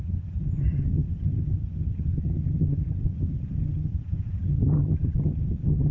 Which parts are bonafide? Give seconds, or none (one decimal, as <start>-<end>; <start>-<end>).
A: none